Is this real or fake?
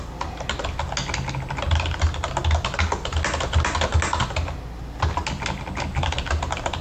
real